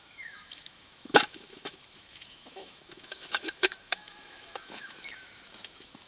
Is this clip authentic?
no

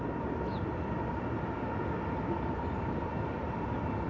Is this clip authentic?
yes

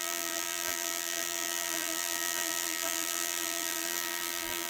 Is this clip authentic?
no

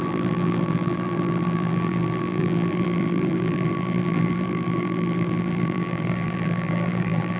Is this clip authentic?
no